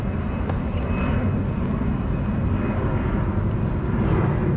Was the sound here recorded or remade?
recorded